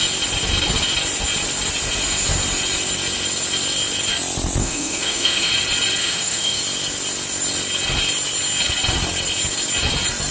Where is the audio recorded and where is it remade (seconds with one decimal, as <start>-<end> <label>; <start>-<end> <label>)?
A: 0.0-4.6 recorded; 4.6-5.5 remade; 5.5-6.0 recorded; 6.0-6.6 remade; 6.6-10.3 recorded